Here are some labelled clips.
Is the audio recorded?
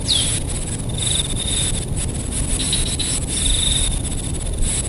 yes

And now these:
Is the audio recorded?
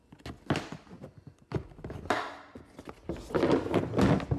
yes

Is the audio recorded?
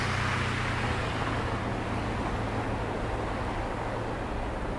yes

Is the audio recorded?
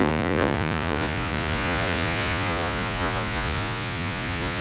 no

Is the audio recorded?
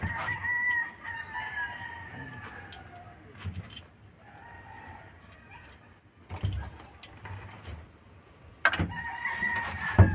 yes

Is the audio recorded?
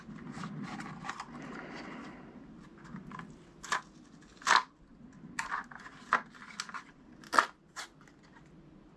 yes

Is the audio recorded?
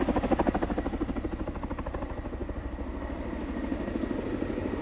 yes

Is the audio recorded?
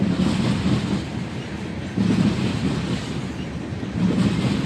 yes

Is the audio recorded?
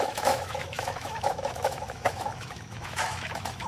no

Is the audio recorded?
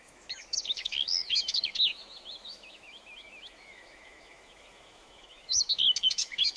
no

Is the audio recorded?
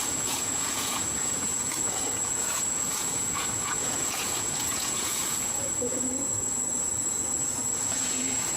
no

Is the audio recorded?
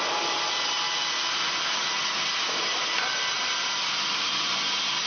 yes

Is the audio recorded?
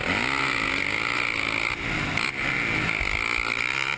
yes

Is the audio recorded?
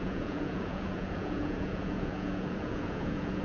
no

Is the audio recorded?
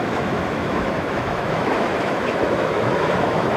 no